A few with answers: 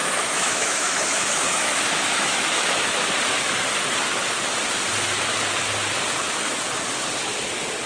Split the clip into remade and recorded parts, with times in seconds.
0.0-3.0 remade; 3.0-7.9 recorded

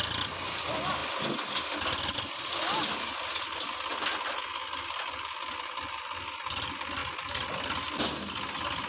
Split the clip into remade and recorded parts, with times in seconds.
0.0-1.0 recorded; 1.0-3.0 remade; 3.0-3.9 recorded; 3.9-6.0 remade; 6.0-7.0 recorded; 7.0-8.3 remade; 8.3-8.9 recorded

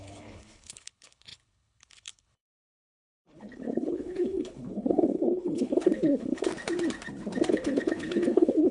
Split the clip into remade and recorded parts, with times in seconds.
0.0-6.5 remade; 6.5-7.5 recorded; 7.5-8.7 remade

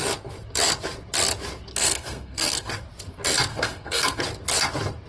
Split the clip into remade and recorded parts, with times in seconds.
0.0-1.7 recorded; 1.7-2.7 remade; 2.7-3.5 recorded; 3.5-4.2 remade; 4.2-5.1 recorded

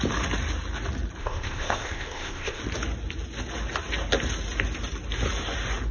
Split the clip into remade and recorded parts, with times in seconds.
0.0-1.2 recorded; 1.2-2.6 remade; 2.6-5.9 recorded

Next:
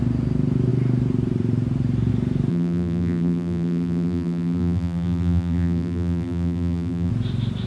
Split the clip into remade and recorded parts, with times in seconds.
0.0-2.5 recorded; 2.5-7.1 remade; 7.1-7.7 recorded